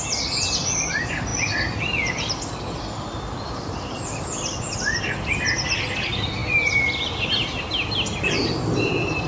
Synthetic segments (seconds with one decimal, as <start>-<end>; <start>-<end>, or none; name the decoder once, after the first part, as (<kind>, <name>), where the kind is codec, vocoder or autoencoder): none